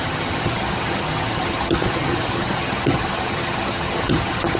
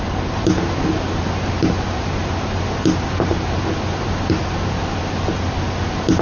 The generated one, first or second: first